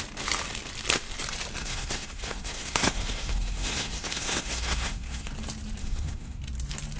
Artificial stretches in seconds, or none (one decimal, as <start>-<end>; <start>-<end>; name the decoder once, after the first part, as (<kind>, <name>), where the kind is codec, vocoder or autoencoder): 1.6-5.3 (codec, SNAC); 5.8-6.4